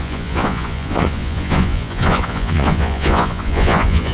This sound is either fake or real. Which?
fake